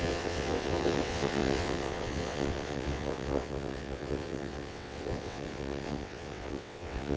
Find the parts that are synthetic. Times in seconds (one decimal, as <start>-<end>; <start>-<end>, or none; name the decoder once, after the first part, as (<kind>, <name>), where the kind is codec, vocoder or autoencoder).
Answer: 0.0-7.2 (vocoder, WaveNeXt)